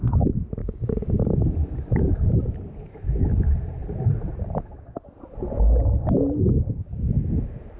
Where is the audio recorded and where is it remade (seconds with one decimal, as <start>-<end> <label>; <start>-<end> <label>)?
0.0-0.6 recorded; 0.6-1.1 remade; 1.1-7.8 recorded